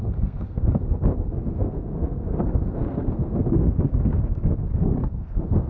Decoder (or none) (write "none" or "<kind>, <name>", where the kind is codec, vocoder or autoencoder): codec, SNAC